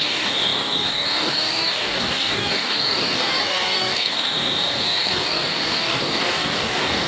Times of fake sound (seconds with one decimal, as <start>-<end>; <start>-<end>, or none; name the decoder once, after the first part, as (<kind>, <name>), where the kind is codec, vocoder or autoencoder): 0.0-7.1 (codec, DAC)